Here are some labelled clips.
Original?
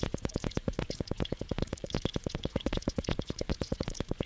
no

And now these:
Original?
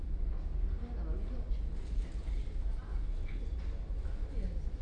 yes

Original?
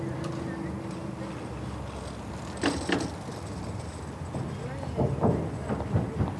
yes